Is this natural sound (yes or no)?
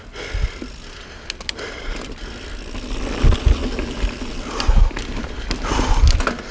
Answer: yes